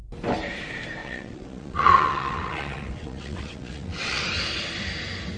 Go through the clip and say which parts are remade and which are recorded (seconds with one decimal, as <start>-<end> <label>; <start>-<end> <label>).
0.0-1.0 recorded; 1.0-4.2 remade; 4.2-5.4 recorded